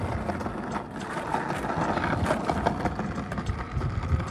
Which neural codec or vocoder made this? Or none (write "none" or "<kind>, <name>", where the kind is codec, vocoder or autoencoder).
none